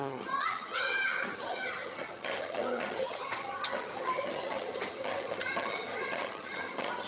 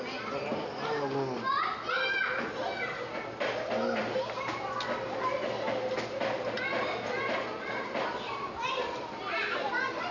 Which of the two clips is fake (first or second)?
first